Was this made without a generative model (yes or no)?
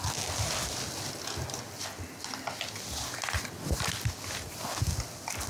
yes